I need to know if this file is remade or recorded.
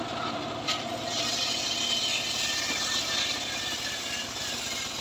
recorded